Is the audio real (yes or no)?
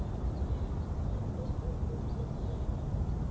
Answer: yes